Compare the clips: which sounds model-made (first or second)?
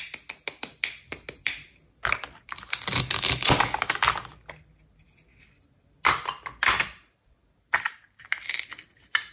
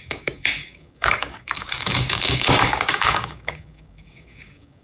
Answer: second